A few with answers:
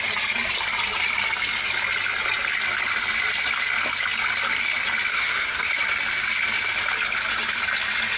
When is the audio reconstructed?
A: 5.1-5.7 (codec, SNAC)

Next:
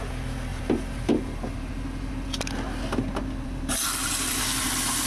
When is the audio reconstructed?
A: none

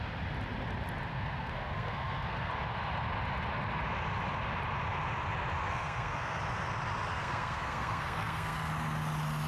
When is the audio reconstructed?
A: 1.1-2.5 (codec, SNAC); 5.6-6.4; 7.1-8.7

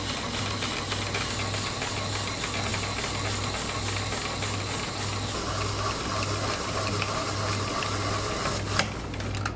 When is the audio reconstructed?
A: none